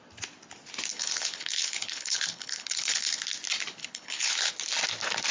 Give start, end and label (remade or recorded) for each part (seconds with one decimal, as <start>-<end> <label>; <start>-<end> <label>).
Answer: 0.0-0.9 recorded; 0.9-3.2 remade; 3.2-3.8 recorded; 3.8-4.5 remade; 4.5-5.3 recorded